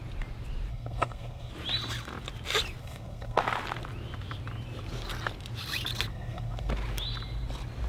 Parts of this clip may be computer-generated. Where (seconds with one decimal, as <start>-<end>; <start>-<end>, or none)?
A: 0.7-1.5; 2.8-3.4; 6.1-6.7